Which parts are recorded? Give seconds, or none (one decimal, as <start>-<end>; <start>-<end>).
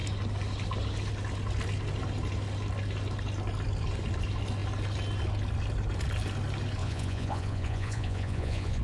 0.0-6.8